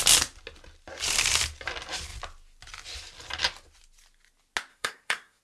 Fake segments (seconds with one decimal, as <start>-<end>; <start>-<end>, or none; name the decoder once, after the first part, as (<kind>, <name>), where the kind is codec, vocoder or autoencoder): 4.7-5.4 (codec, SNAC)